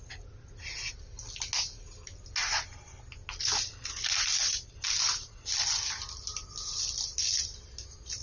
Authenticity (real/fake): real